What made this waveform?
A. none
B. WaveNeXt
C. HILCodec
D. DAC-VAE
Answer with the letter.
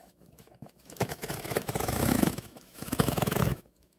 D